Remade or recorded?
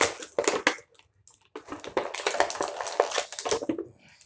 recorded